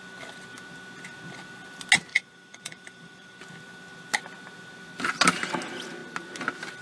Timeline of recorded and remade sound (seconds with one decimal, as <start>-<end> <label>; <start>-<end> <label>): 0.0-2.1 recorded; 2.1-3.4 remade; 3.4-6.8 recorded